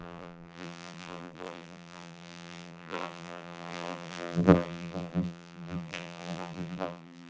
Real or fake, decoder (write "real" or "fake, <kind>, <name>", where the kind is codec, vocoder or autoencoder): fake, vocoder, BigVGAN v2